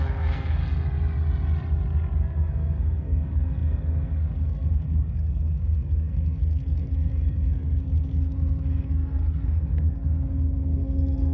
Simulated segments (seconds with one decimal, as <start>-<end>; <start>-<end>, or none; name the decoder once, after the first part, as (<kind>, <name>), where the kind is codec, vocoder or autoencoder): 0.0-0.6 (codec, SNAC); 2.2-11.3